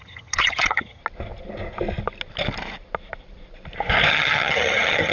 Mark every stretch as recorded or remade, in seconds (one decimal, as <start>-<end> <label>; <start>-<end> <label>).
0.0-1.0 remade; 1.0-4.1 recorded; 4.1-5.1 remade